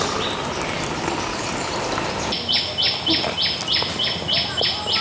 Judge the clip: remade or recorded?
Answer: recorded